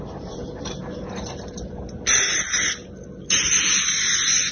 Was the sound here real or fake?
real